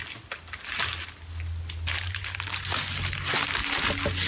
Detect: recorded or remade recorded